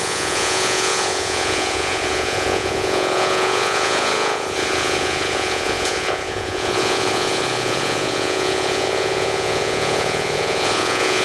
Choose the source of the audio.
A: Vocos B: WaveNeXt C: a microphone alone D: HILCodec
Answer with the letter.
A